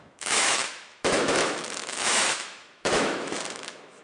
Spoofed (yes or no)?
yes